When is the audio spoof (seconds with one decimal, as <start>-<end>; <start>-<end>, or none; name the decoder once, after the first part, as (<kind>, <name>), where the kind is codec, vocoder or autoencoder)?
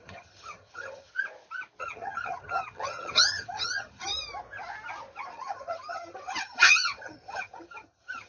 0.0-1.1 (vocoder, HiFi-GAN); 1.8-4.1; 5.3-8.3